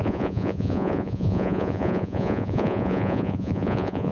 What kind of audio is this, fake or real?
fake